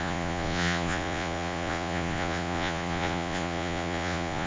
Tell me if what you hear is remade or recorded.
remade